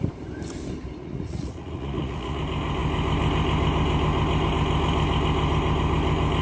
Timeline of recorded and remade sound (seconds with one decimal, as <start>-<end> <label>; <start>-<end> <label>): 0.0-1.0 recorded; 1.0-2.4 remade; 2.4-6.4 recorded